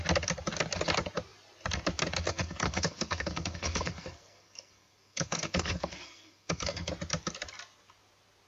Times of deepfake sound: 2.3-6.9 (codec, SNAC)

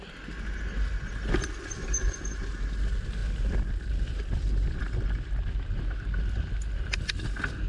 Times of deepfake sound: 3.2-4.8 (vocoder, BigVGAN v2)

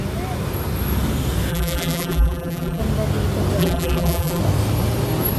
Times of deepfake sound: 1.5-2.8 (vocoder, BigVGAN v2); 3.6-4.4

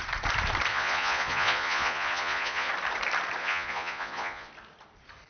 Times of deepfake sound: 0.7-2.7 (vocoder, Vocos); 3.4-4.5

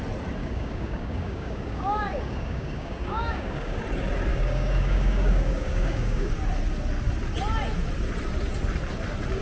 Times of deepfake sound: 0.4-3.8 (codec, DAC); 4.3-6.3

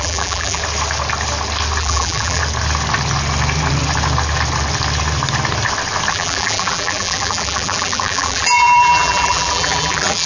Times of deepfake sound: 0.0-0.6 (vocoder, BigVGAN v2); 1.8-2.4; 6.1-10.3

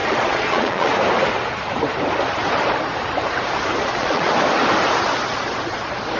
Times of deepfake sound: 0.0-0.9 (vocoder, Vocos); 3.8-4.3

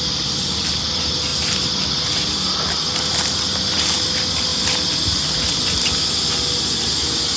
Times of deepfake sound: none